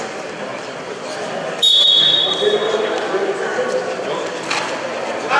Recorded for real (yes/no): no